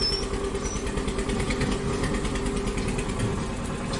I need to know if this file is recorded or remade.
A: recorded